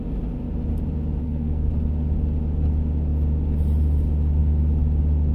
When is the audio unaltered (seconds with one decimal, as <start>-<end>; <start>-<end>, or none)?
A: 0.0-1.2; 1.7-5.3

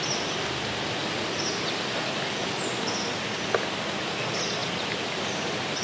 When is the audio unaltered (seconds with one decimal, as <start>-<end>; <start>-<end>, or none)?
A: 0.0-5.8

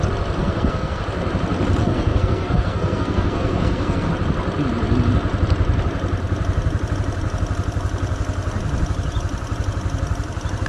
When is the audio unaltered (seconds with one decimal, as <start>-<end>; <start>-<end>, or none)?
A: 0.0-0.4; 1.0-1.8; 4.1-10.7

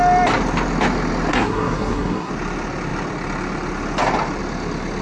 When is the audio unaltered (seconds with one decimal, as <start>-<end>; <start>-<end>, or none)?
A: 0.0-1.3; 2.3-5.0

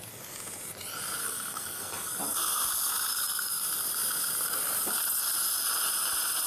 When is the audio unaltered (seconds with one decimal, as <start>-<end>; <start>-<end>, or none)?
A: 0.0-1.2; 2.7-3.1; 3.6-6.5

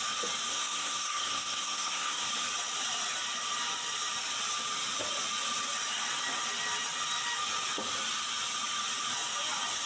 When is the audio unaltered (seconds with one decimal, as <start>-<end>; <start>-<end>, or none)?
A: 0.0-0.5; 2.3-9.9

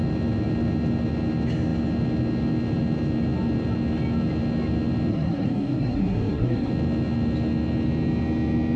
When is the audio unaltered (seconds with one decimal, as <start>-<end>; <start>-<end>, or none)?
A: 0.0-5.1; 6.7-8.8